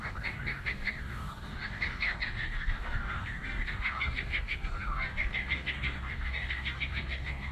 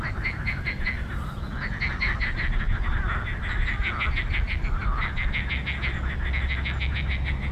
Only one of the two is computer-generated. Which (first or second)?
first